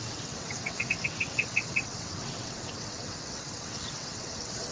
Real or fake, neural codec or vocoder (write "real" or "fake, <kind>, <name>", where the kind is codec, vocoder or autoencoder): fake, vocoder, WaveNeXt